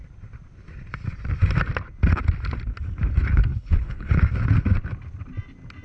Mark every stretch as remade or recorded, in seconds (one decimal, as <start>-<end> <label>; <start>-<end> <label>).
0.0-3.5 recorded; 3.5-4.2 remade; 4.2-5.8 recorded